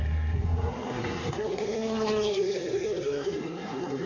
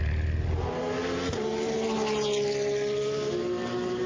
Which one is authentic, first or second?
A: second